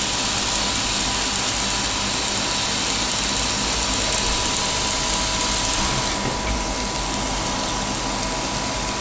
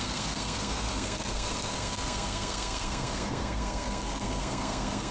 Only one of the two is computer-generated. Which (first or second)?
second